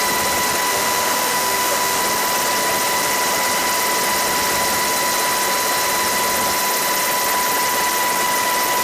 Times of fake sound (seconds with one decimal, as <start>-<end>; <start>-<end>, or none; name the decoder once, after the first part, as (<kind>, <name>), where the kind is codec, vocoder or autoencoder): 0.7-2.0 (autoencoder, DAC-VAE)

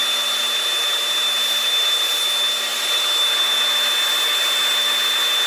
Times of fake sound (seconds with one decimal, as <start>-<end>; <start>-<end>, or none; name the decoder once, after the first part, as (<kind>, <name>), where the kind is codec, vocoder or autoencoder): 0.0-2.2 (vocoder, BigVGAN v2); 2.7-3.6

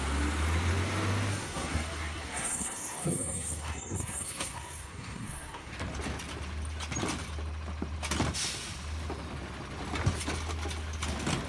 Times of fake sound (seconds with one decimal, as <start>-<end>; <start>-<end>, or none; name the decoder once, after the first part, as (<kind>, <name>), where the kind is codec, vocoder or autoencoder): 1.3-5.7 (codec, SNAC)